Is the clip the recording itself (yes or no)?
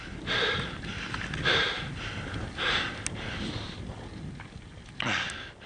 yes